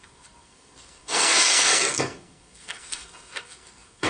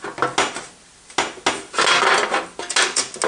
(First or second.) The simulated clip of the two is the first